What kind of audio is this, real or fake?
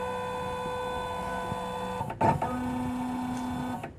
real